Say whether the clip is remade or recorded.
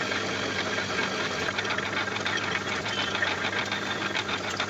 recorded